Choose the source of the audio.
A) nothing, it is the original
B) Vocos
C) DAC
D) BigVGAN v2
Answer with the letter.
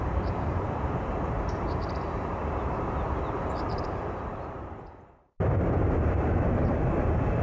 D